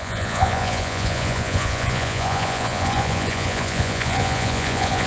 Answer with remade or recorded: remade